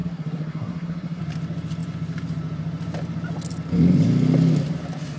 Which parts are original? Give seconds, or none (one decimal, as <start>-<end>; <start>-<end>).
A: 1.2-5.2